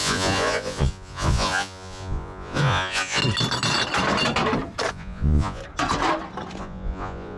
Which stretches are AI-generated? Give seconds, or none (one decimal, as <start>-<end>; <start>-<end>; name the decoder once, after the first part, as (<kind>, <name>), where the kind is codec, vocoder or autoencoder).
0.0-3.2 (vocoder, Vocos); 4.9-5.6; 6.6-7.4